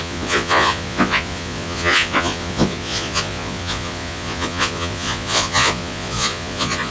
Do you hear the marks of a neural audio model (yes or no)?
yes